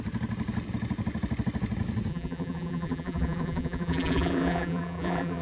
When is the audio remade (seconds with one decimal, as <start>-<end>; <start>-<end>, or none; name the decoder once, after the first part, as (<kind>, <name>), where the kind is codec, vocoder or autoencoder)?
2.1-5.4 (vocoder, BigVGAN v2)

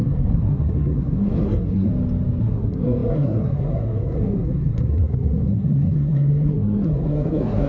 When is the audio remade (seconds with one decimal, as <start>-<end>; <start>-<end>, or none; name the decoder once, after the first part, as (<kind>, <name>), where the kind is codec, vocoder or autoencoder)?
0.0-1.9 (codec, SNAC); 2.4-7.7

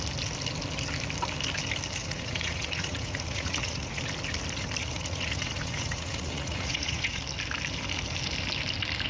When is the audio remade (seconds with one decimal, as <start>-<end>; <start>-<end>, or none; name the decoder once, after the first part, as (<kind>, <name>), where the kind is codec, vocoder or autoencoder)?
2.0-4.0 (vocoder, Vocos); 4.8-7.2

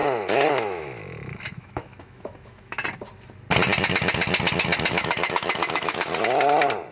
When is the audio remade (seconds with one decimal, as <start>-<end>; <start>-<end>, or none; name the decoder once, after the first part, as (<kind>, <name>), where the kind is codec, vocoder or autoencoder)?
0.5-2.8 (autoencoder, DAC-VAE); 4.9-6.1

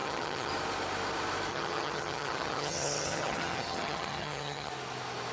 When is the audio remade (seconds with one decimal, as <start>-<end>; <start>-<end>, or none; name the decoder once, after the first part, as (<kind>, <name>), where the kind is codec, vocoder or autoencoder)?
0.0-0.5 (vocoder, HiFi-GAN); 1.5-4.7

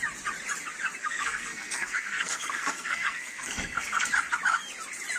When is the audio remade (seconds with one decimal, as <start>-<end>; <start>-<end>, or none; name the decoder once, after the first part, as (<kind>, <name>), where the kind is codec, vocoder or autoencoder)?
1.0-4.1 (codec, SNAC)

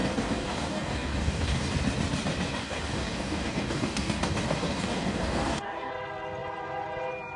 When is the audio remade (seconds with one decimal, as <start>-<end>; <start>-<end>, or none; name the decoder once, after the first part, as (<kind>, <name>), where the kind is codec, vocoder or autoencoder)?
0.0-1.7 (codec, DAC); 2.6-5.9

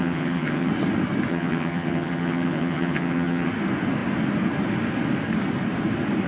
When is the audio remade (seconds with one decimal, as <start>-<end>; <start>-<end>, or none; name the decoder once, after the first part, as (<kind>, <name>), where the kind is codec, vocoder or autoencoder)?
0.0-0.7 (vocoder, HiFi-GAN); 1.3-3.5